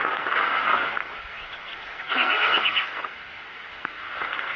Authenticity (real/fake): fake